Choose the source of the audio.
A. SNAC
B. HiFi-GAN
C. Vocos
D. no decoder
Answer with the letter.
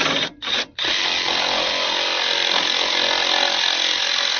D